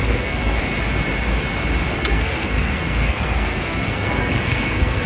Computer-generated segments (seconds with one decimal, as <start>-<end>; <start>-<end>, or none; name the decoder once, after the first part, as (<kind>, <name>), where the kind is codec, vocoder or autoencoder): 0.0-0.6 (codec, SNAC); 1.9-5.1